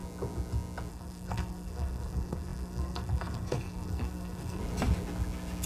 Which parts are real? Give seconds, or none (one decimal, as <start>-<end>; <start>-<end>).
0.0-0.9; 4.6-5.7